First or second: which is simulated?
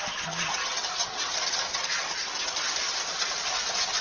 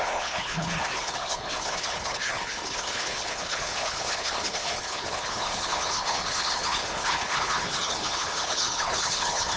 second